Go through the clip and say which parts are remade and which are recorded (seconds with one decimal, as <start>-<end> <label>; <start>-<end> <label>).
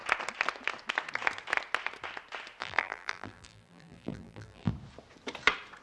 0.0-2.6 recorded; 2.6-4.7 remade; 4.7-5.8 recorded